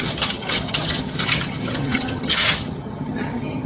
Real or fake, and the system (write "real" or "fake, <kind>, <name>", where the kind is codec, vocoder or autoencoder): fake, vocoder, HiFi-GAN